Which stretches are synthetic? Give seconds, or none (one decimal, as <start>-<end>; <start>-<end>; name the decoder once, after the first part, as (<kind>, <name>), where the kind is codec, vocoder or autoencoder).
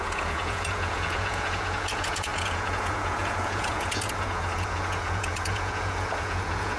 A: 0.0-6.8 (vocoder, Vocos)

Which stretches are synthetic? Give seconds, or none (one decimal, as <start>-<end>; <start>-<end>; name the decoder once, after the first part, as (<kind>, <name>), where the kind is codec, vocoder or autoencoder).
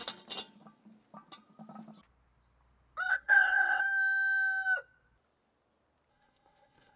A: 3.1-3.8 (codec, SNAC); 6.1-7.0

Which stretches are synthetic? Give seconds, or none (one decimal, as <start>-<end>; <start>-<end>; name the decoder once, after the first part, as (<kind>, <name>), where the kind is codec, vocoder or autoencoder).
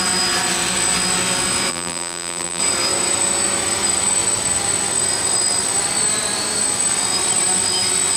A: 1.7-2.6 (vocoder, BigVGAN v2)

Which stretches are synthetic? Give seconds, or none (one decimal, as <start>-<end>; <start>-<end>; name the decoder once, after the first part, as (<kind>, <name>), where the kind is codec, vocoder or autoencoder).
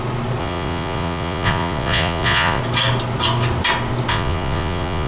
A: 0.4-2.6 (vocoder, Vocos); 4.1-5.1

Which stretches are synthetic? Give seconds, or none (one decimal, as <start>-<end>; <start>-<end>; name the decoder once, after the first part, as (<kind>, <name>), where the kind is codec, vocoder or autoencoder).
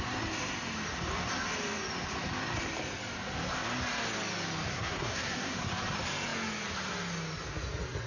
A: 4.7-5.7 (codec, SNAC)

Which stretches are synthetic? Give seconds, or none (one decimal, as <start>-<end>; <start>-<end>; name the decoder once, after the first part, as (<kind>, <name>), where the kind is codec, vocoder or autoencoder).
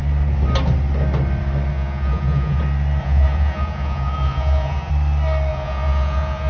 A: 1.7-2.6 (vocoder, Vocos); 3.0-4.9; 5.5-6.5